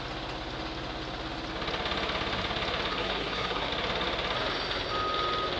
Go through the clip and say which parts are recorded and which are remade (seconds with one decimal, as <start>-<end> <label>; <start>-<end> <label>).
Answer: 0.0-2.9 recorded; 2.9-3.7 remade; 3.7-5.6 recorded